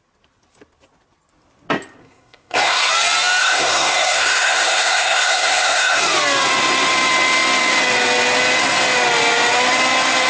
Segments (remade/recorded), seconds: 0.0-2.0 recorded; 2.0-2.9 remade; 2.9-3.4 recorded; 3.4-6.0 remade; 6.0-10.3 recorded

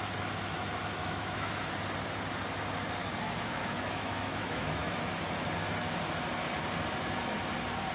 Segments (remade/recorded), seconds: 0.0-1.0 recorded; 1.0-1.5 remade; 1.5-3.0 recorded; 3.0-5.0 remade; 5.0-7.9 recorded

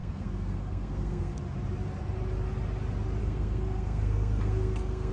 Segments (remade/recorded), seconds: 0.0-1.4 remade; 1.4-3.2 recorded; 3.2-5.1 remade

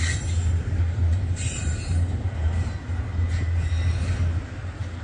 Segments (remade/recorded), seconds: 0.0-1.1 recorded; 1.1-2.7 remade; 2.7-5.0 recorded